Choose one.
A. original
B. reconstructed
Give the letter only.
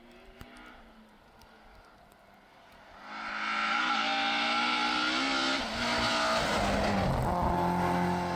A